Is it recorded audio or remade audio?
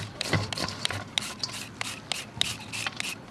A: recorded